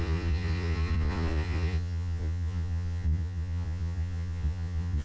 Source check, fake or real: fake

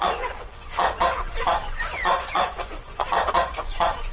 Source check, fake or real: fake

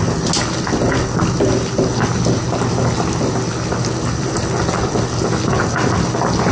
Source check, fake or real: real